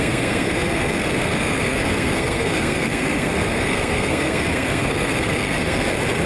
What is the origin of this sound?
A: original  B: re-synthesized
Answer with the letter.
B